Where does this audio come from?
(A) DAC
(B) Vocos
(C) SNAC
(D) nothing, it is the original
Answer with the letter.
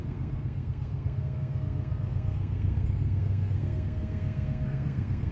C